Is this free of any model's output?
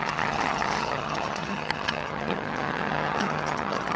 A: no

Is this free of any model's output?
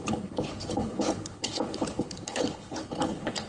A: no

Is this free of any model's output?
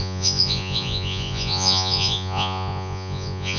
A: no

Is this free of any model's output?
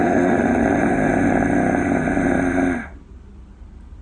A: yes